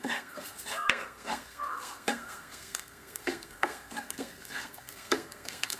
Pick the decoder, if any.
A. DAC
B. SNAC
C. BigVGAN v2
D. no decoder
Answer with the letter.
B